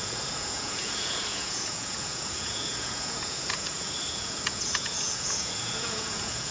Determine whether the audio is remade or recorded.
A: remade